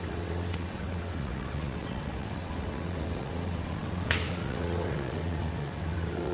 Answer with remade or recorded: remade